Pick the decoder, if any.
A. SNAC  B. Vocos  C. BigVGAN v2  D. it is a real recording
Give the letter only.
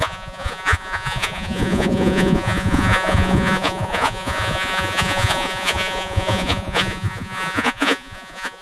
B